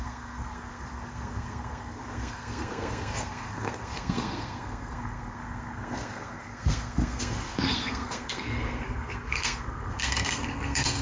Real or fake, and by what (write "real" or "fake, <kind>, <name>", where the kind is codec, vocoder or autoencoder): fake, codec, SNAC